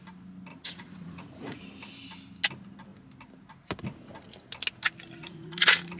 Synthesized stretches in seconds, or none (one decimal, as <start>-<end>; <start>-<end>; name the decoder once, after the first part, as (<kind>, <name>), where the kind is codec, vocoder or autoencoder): 0.5-1.6 (vocoder, Vocos); 5.2-6.0